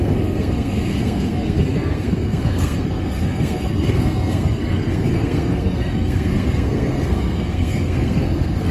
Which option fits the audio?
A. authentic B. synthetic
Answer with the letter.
B